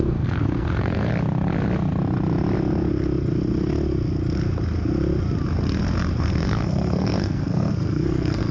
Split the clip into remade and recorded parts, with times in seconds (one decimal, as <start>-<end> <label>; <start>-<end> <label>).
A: 0.0-1.1 remade; 1.1-6.2 recorded; 6.2-8.5 remade